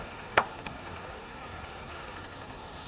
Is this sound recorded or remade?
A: remade